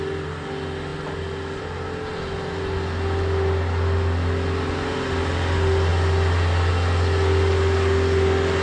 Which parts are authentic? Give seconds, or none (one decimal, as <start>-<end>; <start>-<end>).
0.0-8.6

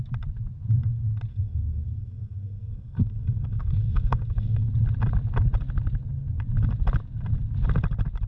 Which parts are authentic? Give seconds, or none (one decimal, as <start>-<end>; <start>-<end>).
0.0-1.3; 4.7-8.3

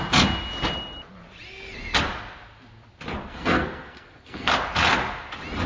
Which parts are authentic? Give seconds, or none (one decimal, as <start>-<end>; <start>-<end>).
0.0-3.2; 4.5-5.7

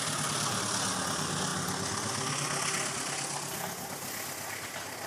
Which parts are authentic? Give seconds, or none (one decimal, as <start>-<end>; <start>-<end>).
0.0-5.1